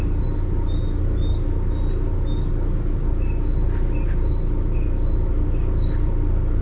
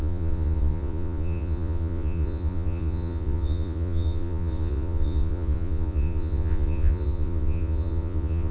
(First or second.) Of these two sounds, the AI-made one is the second